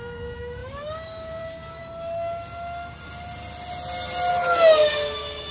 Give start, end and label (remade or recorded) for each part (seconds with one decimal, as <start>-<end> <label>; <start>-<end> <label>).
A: 0.0-1.8 remade; 1.8-4.3 recorded; 4.3-5.5 remade